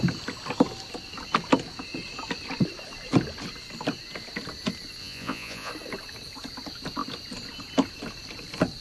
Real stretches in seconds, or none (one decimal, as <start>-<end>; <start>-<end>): 0.0-5.0; 5.7-8.8